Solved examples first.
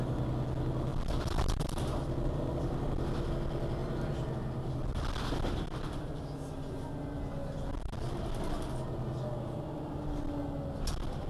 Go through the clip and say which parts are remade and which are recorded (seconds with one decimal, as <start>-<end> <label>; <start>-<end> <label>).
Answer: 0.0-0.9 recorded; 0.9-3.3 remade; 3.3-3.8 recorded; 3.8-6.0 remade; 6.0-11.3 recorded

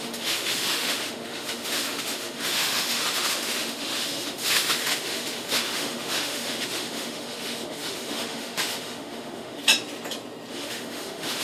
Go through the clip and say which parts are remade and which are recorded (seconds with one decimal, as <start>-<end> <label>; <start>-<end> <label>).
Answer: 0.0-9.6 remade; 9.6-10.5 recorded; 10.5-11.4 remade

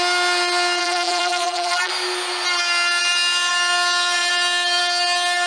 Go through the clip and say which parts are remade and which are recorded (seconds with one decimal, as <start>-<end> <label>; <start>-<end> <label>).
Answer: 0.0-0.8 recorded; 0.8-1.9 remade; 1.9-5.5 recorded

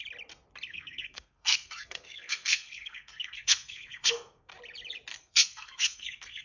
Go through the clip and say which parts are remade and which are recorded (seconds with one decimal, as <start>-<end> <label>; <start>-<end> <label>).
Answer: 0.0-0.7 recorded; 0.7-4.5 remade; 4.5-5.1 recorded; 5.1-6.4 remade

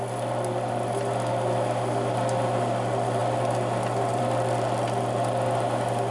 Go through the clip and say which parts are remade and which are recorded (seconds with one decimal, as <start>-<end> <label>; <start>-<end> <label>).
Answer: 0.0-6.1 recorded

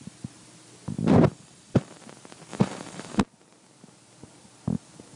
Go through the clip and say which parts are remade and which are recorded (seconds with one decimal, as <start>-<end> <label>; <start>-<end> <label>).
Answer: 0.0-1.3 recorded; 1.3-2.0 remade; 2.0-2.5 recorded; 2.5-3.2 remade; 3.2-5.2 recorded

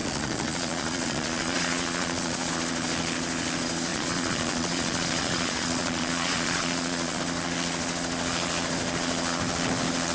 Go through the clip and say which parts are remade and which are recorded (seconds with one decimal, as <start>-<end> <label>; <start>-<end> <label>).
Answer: 0.0-2.5 remade; 2.5-3.9 recorded; 3.9-7.2 remade; 7.2-10.1 recorded

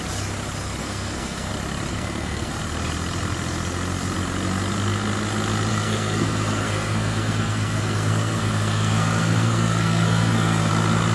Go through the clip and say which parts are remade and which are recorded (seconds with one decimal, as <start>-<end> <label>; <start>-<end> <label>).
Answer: 0.0-0.8 recorded; 0.8-1.5 remade; 1.5-1.9 recorded; 1.9-2.5 remade; 2.5-5.7 recorded; 5.7-10.7 remade; 10.7-11.1 recorded